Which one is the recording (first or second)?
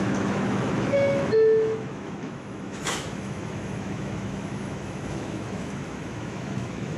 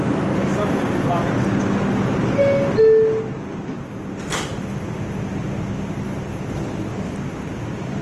second